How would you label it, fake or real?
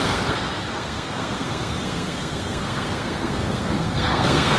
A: fake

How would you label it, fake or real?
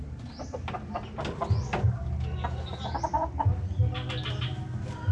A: real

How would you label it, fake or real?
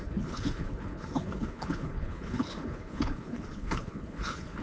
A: fake